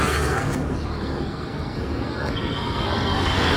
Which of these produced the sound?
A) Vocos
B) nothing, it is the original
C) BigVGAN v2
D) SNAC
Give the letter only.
D